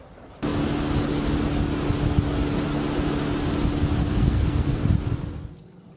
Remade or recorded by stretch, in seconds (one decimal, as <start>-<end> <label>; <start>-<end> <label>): 0.0-4.1 recorded; 4.1-4.8 remade; 4.8-6.0 recorded